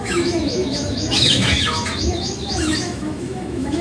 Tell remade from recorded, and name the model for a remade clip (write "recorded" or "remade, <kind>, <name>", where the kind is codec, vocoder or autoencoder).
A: remade, autoencoder, DAC-VAE